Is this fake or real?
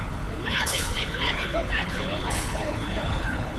fake